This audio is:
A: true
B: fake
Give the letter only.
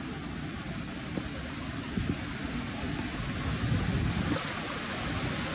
A